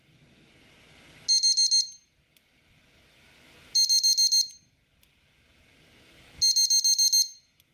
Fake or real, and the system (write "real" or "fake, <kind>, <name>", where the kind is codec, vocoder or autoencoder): real